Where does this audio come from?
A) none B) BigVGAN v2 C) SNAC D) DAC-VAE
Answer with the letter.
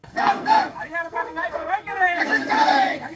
C